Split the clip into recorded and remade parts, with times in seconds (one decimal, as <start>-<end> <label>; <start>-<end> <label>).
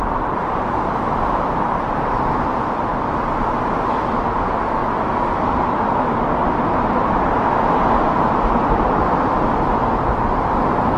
0.0-11.0 recorded